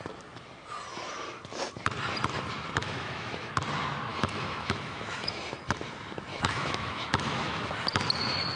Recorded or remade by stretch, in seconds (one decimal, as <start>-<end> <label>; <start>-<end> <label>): 0.0-2.8 recorded; 2.8-3.5 remade; 3.5-4.1 recorded; 4.1-5.4 remade; 5.4-6.3 recorded; 6.3-7.7 remade; 7.7-8.6 recorded